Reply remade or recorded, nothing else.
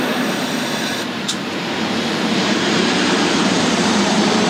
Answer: remade